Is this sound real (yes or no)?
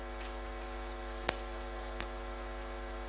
yes